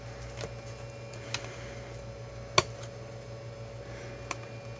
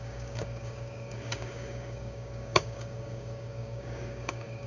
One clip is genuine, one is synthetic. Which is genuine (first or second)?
first